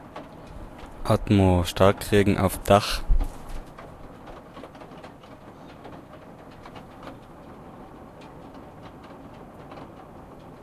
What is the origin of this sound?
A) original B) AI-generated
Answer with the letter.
A